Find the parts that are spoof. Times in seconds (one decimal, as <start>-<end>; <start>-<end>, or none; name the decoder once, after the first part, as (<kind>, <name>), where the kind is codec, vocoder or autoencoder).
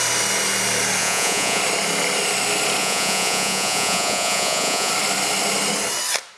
1.0-1.6 (vocoder, Vocos); 2.8-4.9